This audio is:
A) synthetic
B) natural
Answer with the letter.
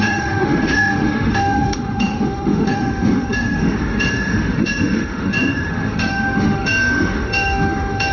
A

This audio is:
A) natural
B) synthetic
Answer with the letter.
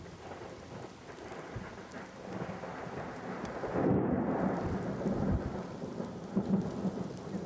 A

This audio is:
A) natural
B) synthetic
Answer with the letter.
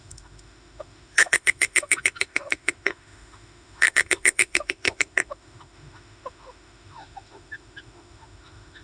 B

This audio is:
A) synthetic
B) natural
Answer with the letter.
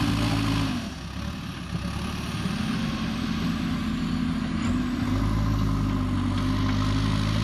B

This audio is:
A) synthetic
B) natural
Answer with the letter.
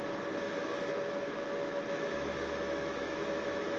A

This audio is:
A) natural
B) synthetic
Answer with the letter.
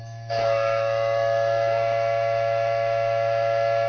B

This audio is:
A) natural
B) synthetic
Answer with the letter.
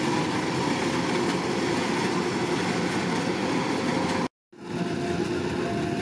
A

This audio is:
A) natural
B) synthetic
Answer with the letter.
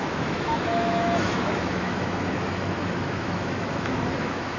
B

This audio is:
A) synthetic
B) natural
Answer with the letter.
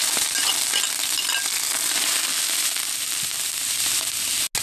B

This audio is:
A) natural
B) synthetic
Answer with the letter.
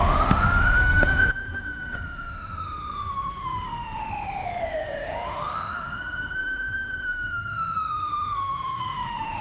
B